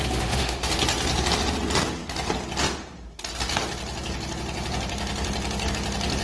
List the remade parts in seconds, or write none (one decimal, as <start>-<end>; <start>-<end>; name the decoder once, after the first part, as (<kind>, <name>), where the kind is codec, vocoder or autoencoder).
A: 0.0-0.7 (autoencoder, DAC-VAE)